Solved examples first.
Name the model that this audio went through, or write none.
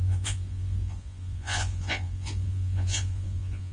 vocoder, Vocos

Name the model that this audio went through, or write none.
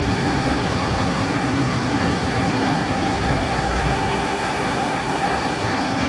codec, SNAC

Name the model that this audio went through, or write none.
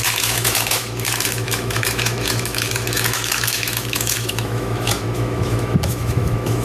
autoencoder, DAC-VAE